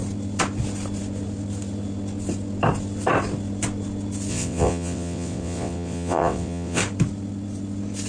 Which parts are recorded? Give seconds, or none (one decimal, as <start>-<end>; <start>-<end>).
0.0-4.3; 6.8-8.1